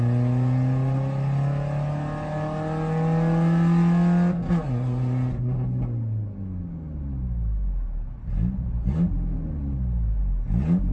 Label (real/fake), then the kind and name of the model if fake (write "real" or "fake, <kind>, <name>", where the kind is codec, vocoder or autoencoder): real